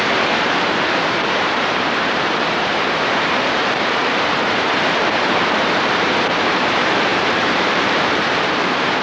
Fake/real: fake